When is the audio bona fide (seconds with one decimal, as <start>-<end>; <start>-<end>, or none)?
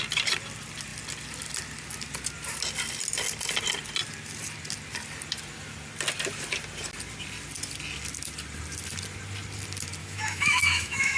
0.0-10.0